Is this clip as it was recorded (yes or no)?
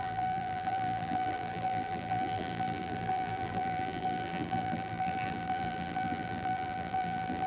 no